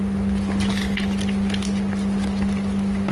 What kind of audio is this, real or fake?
real